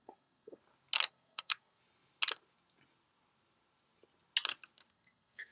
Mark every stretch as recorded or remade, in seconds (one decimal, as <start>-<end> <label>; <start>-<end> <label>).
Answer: 0.0-0.6 remade; 0.6-1.1 recorded; 1.1-1.8 remade; 1.8-4.9 recorded; 4.9-5.5 remade